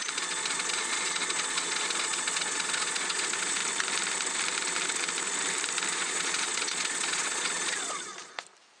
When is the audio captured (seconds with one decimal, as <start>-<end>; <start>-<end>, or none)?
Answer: 3.6-5.9; 8.1-8.8